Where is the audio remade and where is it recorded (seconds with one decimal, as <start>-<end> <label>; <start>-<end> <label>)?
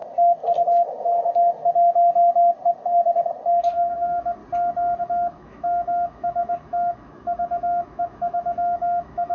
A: 0.0-3.6 recorded; 3.6-4.4 remade; 4.4-5.0 recorded; 5.0-9.3 remade